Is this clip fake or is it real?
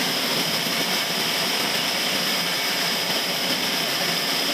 fake